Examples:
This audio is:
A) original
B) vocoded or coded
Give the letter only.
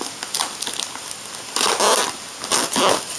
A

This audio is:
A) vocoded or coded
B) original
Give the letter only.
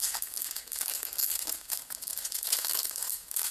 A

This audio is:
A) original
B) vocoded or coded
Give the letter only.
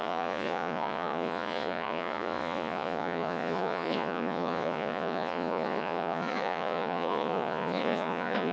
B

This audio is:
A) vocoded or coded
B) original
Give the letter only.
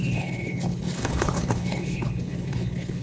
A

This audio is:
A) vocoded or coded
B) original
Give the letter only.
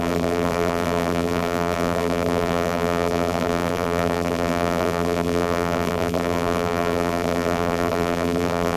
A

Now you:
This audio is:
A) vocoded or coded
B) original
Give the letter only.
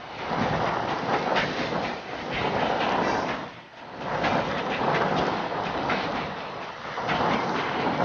B